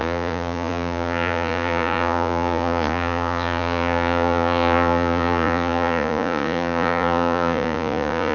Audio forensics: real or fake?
fake